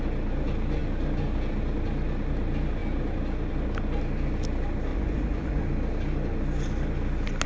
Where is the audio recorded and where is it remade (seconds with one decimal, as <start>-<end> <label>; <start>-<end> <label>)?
0.0-4.9 recorded; 4.9-5.6 remade; 5.6-7.5 recorded